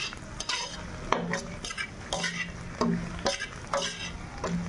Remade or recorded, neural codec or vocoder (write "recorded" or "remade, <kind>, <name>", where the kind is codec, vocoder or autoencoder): recorded